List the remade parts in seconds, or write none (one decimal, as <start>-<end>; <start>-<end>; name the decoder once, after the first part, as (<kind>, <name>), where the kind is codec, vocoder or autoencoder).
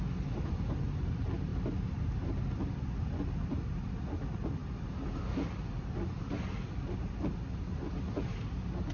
none